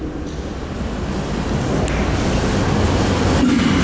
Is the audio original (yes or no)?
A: yes